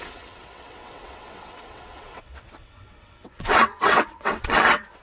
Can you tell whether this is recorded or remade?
remade